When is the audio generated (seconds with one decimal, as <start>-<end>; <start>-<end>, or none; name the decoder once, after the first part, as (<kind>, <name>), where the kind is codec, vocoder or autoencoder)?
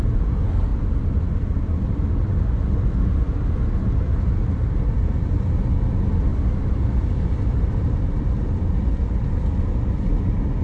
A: 0.7-1.8 (vocoder, BigVGAN v2); 6.3-8.5